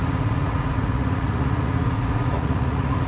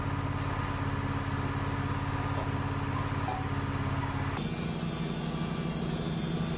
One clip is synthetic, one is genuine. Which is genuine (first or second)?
second